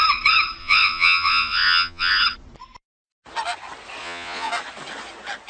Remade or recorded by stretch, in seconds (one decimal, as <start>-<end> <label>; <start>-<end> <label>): 0.0-0.6 recorded; 0.6-2.1 remade; 2.1-4.0 recorded; 4.0-4.5 remade; 4.5-5.5 recorded